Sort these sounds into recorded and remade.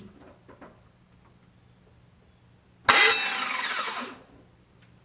recorded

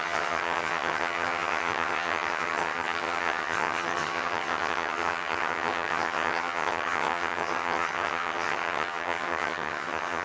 remade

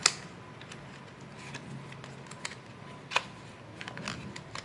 recorded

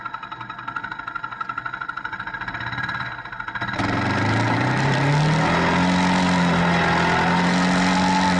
recorded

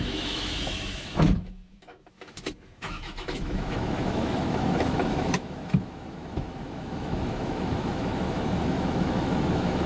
remade